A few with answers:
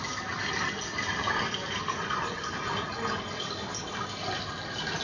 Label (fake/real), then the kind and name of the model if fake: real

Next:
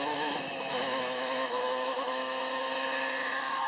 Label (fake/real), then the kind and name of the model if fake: fake, autoencoder, DAC-VAE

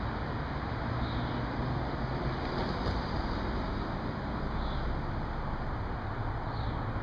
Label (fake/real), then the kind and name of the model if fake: real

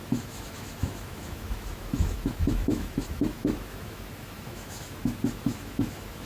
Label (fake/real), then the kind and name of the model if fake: fake, autoencoder, DAC-VAE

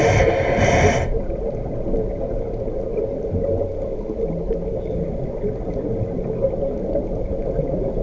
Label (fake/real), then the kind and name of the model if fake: real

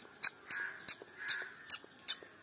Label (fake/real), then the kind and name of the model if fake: real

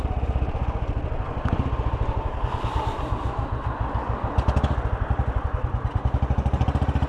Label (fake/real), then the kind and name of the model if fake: fake, vocoder, BigVGAN v2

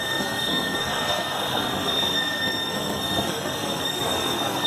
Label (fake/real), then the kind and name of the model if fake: fake, codec, SNAC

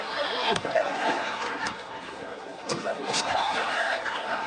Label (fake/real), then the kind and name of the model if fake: fake, codec, SNAC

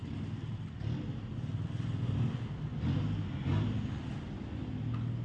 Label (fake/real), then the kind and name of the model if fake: real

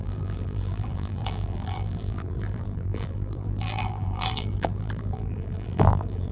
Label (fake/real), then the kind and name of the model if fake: fake, vocoder, BigVGAN v2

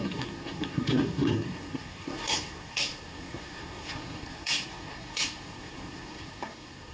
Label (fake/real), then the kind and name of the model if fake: fake, codec, SNAC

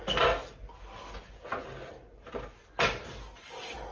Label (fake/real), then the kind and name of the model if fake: real